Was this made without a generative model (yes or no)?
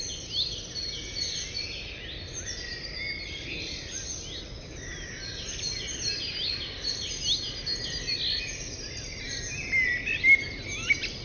yes